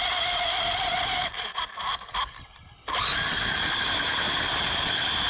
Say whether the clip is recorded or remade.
recorded